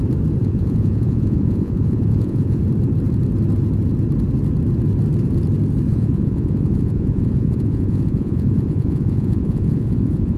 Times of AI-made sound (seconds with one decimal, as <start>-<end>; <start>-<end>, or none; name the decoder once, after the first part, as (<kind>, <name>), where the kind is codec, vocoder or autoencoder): 0.4-2.6 (vocoder, Vocos); 5.9-10.4